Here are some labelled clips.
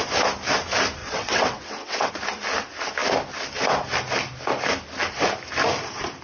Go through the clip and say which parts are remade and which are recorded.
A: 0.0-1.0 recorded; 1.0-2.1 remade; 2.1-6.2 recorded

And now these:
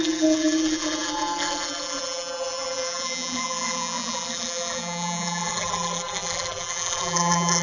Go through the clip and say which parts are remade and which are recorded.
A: 0.0-7.6 remade

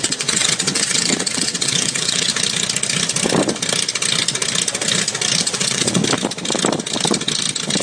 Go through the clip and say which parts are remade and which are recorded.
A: 0.0-2.3 remade; 2.3-5.4 recorded; 5.4-6.0 remade; 6.0-7.8 recorded